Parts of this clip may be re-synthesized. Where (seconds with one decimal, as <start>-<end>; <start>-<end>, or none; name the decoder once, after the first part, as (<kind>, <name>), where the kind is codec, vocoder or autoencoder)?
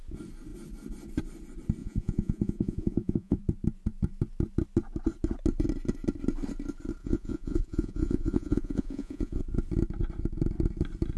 1.8-3.4 (vocoder, Vocos); 7.0-9.4